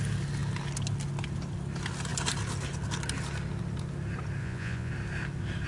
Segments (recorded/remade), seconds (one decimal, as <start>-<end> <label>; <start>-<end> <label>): 0.0-4.4 recorded; 4.4-4.9 remade; 4.9-5.7 recorded